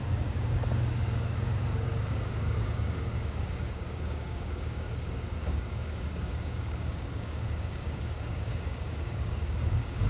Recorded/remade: remade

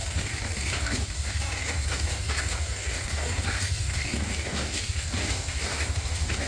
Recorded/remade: remade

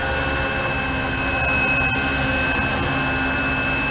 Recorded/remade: recorded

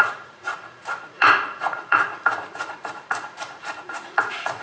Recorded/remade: remade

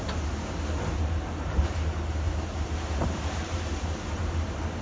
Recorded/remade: remade